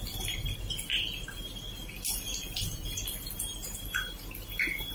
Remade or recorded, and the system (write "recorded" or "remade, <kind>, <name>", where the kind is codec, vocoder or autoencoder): recorded